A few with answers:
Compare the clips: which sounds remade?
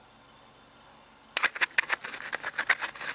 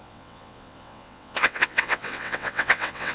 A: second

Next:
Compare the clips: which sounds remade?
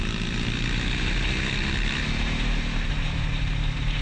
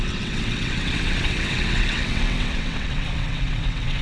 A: second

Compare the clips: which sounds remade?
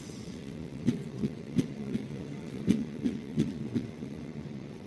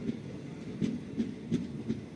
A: first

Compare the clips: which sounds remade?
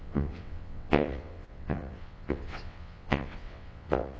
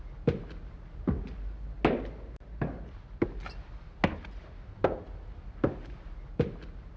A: first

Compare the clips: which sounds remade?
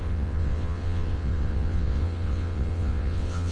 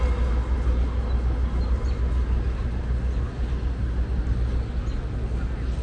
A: first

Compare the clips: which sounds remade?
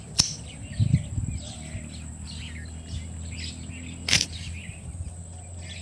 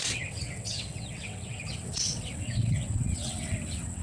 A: second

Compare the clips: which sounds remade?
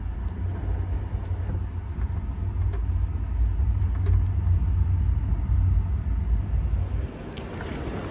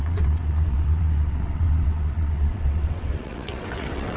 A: second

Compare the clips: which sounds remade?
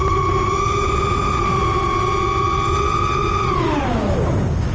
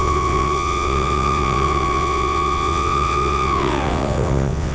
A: second